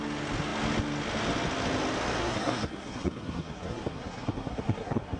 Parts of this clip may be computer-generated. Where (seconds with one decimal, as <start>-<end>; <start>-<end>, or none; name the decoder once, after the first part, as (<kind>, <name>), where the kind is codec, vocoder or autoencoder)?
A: 2.2-5.2 (codec, SNAC)